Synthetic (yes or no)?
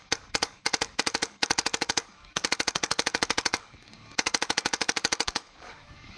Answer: yes